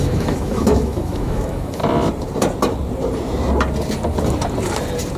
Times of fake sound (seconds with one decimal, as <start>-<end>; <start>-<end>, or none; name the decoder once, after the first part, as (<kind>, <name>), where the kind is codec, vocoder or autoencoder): 0.0-1.8 (autoencoder, DAC-VAE)